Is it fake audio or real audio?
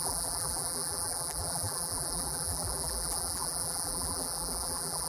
fake